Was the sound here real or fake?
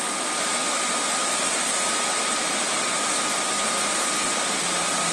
real